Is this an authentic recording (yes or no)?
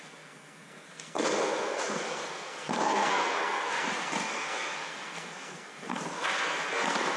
no